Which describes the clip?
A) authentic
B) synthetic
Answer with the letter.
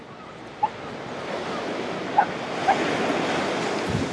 A